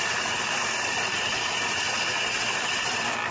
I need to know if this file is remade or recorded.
recorded